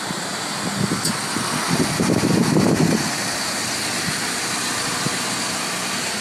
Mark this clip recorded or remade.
recorded